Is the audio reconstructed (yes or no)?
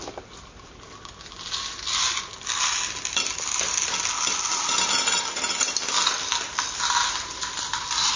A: no